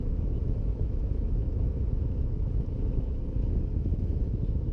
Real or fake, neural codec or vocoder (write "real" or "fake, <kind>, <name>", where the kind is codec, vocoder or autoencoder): fake, autoencoder, DAC-VAE